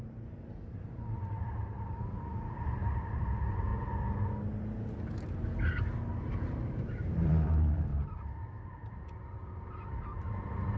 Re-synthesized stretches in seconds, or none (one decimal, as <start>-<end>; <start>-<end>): 0.0-3.7; 6.2-7.9